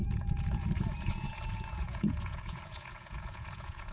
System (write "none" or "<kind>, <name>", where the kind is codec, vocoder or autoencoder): vocoder, Vocos